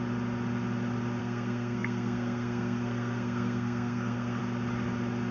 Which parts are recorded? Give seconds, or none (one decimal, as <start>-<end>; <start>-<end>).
0.0-1.2; 4.4-5.3